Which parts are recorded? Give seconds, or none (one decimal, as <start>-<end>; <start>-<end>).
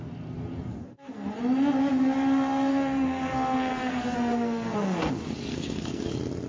0.0-0.8; 1.4-2.7; 5.1-5.5; 6.1-6.5